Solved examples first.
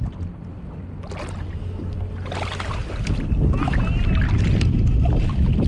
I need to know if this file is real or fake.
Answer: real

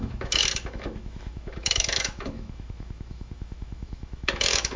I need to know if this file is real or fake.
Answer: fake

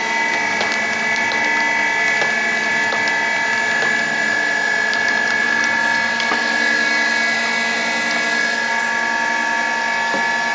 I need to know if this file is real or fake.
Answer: real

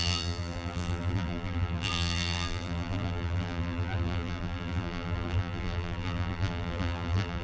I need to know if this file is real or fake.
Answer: fake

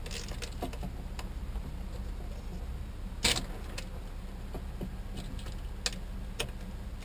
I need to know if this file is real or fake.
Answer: real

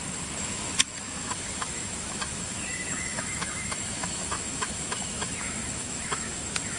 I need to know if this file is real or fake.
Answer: fake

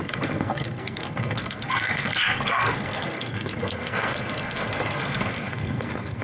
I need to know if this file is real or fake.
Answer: fake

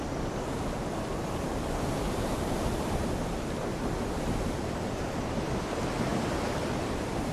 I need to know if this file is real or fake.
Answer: real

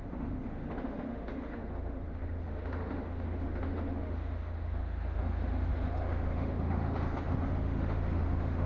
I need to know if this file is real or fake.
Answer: fake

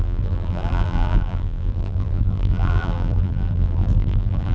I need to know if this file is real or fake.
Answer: fake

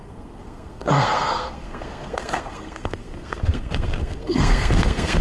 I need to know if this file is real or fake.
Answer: fake